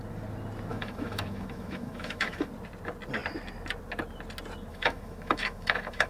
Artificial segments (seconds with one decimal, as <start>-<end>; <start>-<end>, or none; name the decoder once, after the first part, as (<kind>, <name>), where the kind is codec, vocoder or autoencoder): 0.7-2.5 (autoencoder, DAC-VAE); 4.7-6.1